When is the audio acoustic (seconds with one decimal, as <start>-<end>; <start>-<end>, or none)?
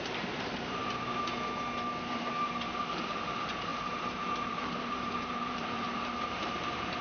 0.8-2.0